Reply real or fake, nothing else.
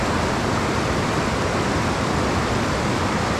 real